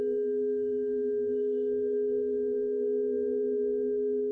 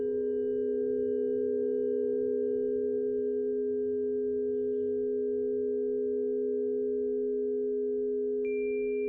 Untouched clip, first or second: second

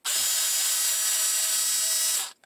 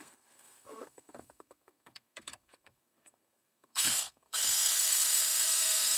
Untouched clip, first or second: first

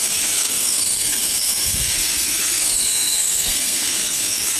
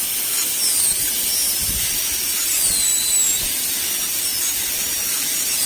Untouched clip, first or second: second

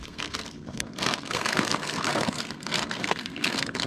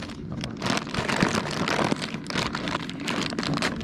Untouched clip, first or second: second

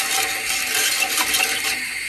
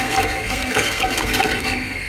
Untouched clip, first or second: first